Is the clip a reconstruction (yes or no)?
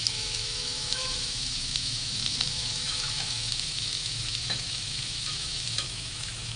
yes